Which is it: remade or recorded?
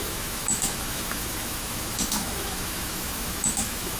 remade